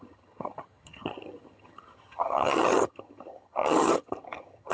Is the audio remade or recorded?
remade